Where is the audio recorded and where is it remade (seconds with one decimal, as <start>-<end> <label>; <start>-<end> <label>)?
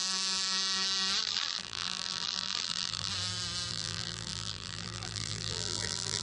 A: 0.0-1.2 recorded; 1.2-3.1 remade; 3.1-3.7 recorded; 3.7-6.2 remade